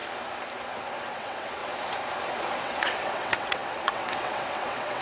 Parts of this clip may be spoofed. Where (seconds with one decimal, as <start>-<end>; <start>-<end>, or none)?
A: 1.1-1.6; 2.6-5.0